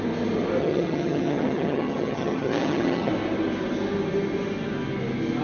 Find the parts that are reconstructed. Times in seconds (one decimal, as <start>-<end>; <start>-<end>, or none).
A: 0.6-3.1